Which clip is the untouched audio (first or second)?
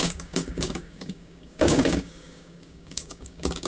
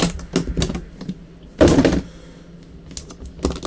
second